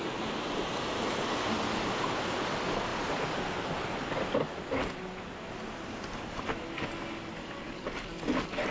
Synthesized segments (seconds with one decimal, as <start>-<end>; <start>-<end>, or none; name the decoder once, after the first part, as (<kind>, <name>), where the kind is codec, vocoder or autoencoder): none